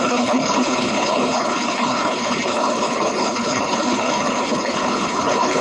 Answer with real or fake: fake